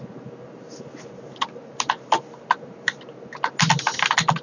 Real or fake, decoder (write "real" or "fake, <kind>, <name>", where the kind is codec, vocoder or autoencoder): real